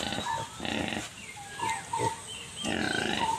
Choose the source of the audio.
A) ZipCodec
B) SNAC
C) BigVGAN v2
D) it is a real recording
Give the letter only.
D